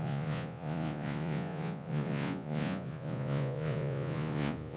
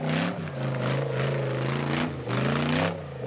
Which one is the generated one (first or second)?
first